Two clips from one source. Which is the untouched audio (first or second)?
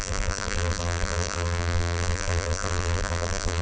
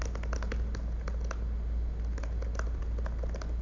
second